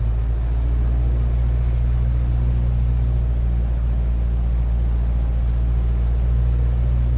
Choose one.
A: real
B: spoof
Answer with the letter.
A